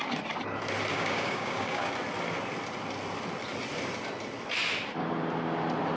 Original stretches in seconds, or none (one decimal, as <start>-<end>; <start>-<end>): 0.0-0.9; 1.9-6.0